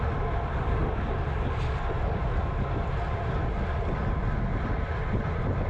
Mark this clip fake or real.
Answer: real